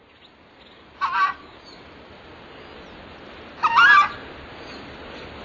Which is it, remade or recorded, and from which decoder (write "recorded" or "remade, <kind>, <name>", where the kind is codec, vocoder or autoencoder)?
recorded